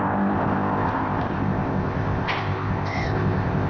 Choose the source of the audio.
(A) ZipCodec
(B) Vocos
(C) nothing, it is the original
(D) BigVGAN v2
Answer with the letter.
A